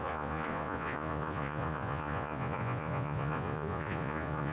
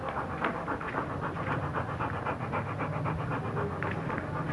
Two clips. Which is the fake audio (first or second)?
first